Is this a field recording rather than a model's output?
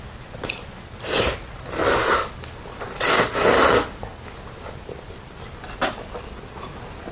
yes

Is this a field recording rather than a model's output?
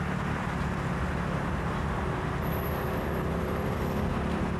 yes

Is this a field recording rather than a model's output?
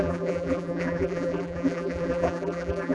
no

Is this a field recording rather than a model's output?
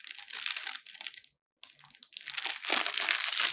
yes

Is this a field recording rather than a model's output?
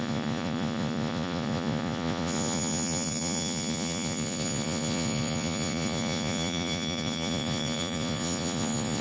no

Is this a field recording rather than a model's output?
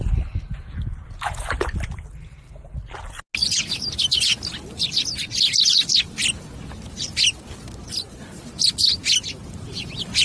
yes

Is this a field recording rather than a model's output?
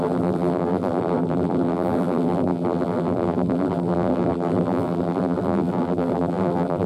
no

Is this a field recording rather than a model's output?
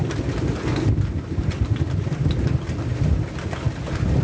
yes